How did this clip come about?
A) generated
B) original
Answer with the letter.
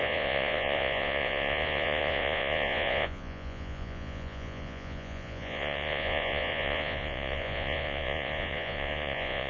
A